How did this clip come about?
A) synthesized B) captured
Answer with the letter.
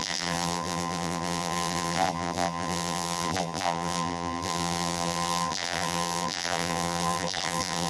A